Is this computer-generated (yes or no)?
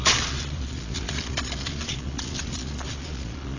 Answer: yes